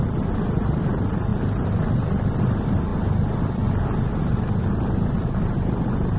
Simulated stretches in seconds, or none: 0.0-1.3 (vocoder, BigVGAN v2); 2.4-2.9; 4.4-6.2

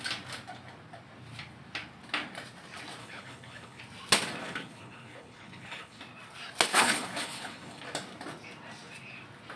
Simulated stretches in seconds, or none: 3.0-3.8 (codec, HILCodec); 4.4-6.0; 6.7-7.8